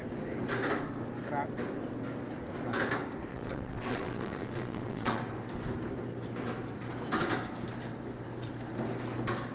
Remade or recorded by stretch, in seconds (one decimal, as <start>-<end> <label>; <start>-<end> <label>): 0.0-3.3 recorded; 3.3-5.2 remade; 5.2-9.5 recorded